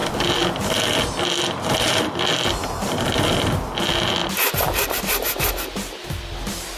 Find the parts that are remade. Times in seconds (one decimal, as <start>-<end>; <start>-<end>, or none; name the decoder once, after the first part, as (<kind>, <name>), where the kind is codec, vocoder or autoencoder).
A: 4.2-6.1 (vocoder, BigVGAN v2)